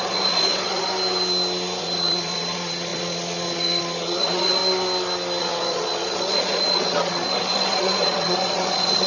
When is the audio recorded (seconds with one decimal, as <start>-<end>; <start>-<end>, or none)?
0.9-1.8; 4.6-5.4